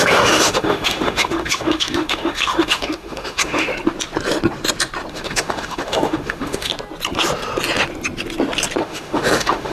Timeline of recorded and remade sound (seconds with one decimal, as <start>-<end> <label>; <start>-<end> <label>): 0.0-3.7 remade; 3.7-5.1 recorded; 5.1-6.7 remade; 6.7-8.8 recorded; 8.8-9.7 remade